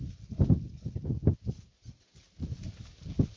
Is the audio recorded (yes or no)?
yes